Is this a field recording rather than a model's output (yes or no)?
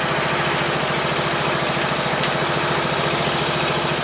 yes